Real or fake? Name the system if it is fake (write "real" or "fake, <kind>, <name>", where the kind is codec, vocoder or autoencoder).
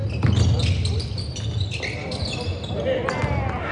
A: real